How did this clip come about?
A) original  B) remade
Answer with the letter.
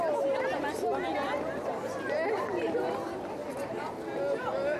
A